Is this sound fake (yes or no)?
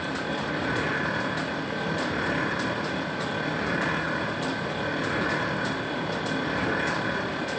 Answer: no